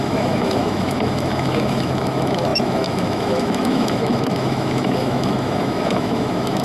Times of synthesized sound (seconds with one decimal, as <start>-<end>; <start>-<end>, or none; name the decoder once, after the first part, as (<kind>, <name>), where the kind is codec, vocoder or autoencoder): 0.0-6.6 (autoencoder, DAC-VAE)